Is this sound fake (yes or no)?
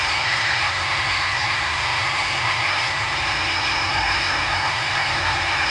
yes